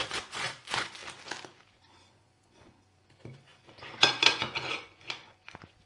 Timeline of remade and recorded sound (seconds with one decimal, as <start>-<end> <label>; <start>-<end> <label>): 0.0-1.0 remade; 1.0-1.7 recorded; 1.7-5.9 remade